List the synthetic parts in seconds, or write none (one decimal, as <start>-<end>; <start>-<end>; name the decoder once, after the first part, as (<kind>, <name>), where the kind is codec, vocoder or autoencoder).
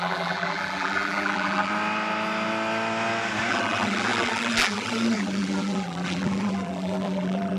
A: 0.0-1.7 (vocoder, BigVGAN v2); 3.5-7.6